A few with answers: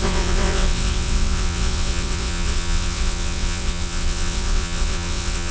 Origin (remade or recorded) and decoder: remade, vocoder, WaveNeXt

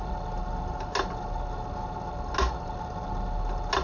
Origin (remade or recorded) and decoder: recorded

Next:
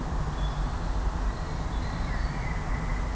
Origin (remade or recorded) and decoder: recorded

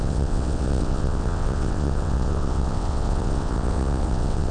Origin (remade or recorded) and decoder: remade, vocoder, WaveNeXt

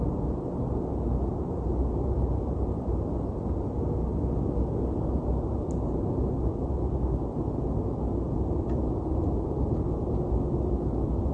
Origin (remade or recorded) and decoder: recorded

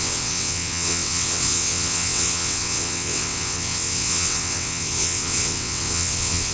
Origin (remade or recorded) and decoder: remade, vocoder, WaveNeXt